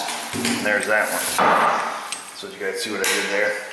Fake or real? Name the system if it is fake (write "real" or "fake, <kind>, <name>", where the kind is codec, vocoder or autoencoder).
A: real